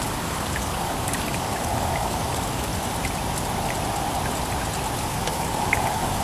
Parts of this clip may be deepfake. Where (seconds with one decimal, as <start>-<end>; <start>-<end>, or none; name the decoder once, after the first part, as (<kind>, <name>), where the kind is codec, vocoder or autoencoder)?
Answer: 0.0-2.7 (codec, DAC); 5.0-6.2